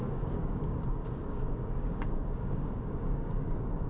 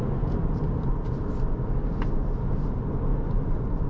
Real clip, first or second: second